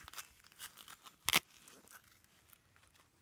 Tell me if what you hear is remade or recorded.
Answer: recorded